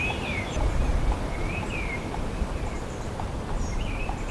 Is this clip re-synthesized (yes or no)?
yes